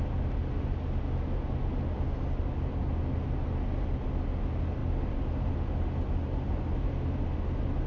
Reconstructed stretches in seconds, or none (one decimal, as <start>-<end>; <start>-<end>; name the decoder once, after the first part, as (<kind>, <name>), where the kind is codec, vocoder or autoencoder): none